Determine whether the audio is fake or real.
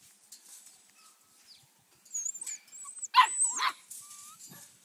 real